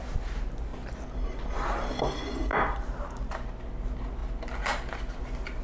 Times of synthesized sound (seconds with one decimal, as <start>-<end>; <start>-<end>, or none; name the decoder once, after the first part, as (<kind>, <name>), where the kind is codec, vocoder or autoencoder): none

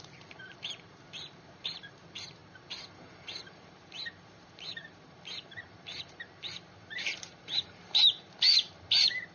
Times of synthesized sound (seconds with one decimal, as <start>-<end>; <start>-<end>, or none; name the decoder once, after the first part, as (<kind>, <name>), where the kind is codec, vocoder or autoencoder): 0.0-9.3 (vocoder, BigVGAN v2)

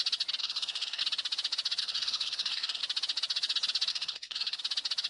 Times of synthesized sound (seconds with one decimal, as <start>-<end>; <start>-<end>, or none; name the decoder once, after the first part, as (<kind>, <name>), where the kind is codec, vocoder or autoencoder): 0.4-1.0 (codec, SNAC); 1.8-2.8; 3.9-4.6

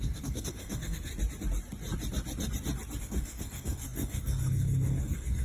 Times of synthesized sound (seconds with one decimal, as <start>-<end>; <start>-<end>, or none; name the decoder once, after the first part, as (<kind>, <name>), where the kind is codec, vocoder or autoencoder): 0.0-1.1 (codec, SNAC); 3.0-5.4

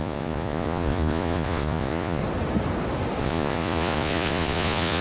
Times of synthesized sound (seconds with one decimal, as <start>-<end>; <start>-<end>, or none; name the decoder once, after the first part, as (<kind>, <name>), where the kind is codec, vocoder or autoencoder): 0.0-2.2 (vocoder, Vocos); 3.2-5.0